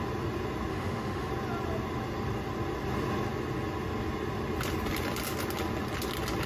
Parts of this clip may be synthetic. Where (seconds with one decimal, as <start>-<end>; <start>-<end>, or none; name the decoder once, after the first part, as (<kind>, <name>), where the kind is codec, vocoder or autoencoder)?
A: 0.7-1.3 (autoencoder, DAC-VAE)